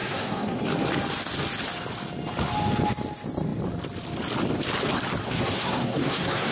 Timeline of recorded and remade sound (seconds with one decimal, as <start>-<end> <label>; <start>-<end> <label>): 0.0-0.6 remade; 0.6-5.2 recorded; 5.2-6.5 remade